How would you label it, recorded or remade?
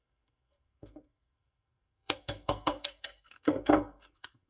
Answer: remade